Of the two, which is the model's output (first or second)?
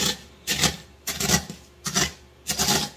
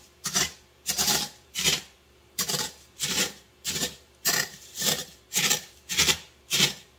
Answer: second